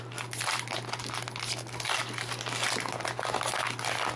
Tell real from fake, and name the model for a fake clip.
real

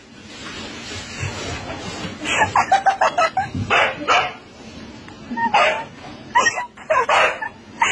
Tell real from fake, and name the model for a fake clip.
real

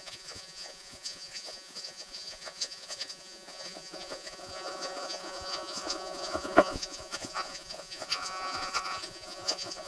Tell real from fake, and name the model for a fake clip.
fake, vocoder, Vocos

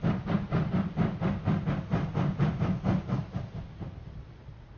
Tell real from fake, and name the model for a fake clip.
real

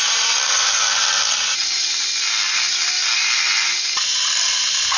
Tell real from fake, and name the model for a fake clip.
real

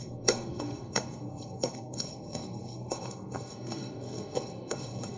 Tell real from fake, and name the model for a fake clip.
fake, codec, SNAC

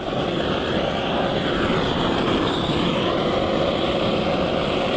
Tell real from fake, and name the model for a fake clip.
real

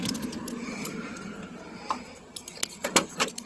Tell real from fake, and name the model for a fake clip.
fake, vocoder, BigVGAN v2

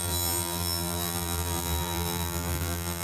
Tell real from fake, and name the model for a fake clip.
fake, vocoder, BigVGAN v2